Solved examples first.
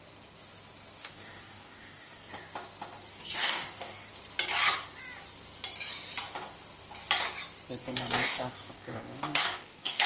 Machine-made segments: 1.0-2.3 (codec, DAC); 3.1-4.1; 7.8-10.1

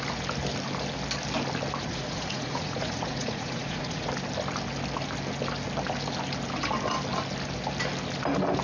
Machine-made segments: 1.8-4.1 (vocoder, Vocos)

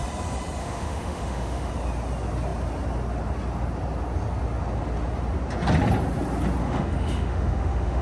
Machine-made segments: 0.6-1.7 (autoencoder, DAC-VAE); 6.6-8.0

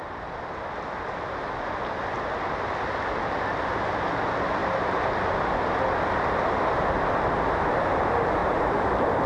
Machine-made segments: 4.6-5.3 (vocoder, BigVGAN v2); 8.4-8.9